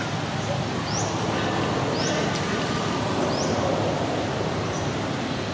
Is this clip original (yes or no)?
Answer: yes